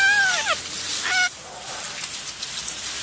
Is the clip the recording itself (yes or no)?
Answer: yes